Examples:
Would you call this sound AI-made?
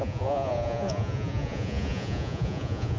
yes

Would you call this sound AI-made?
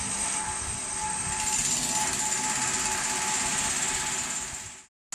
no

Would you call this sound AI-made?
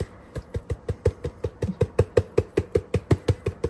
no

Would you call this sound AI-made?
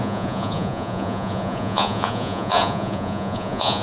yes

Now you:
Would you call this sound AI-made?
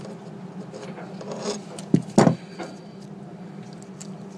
no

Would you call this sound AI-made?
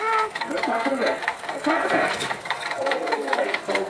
yes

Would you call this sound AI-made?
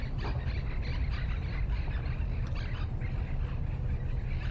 no